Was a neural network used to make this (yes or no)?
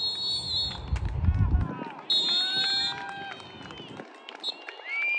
no